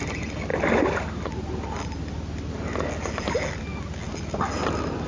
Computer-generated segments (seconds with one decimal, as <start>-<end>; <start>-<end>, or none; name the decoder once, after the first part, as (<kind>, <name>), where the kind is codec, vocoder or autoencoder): none